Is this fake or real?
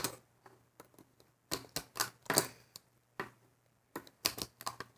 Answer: real